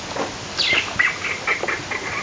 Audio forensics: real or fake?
real